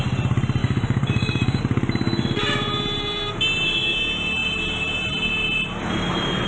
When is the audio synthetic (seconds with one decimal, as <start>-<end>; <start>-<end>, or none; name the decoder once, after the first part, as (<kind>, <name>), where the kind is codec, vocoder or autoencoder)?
0.6-1.6 (codec, DAC)